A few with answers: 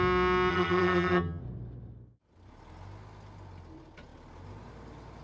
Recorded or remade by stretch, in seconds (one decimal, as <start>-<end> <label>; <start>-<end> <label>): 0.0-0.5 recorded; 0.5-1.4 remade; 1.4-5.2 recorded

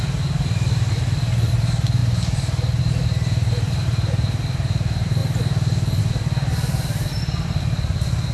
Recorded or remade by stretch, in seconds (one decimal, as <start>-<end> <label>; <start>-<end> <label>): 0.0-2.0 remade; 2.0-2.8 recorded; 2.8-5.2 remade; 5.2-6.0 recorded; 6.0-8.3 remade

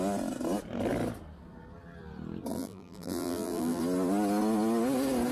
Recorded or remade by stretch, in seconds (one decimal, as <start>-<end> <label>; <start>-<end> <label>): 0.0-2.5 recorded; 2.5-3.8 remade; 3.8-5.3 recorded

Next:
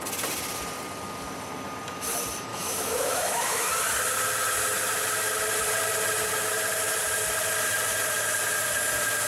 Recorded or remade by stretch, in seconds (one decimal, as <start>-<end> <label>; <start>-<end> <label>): 0.0-2.5 recorded; 2.5-3.7 remade; 3.7-9.3 recorded

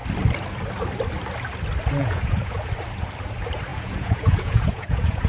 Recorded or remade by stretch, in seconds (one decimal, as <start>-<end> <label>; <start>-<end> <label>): 0.0-2.0 recorded; 2.0-2.7 remade; 2.7-3.7 recorded; 3.7-5.3 remade